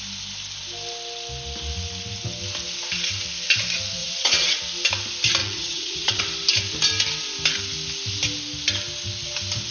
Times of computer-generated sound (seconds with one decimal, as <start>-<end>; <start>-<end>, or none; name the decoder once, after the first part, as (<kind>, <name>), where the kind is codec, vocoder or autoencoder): 4.0-4.6 (vocoder, WaveNeXt); 5.4-6.2